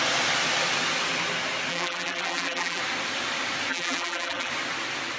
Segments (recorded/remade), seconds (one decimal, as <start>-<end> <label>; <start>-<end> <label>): 0.0-1.7 recorded; 1.7-2.8 remade; 2.8-3.7 recorded; 3.7-4.5 remade; 4.5-5.2 recorded